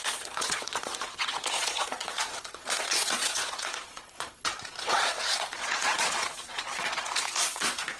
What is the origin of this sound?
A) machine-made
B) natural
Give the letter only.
A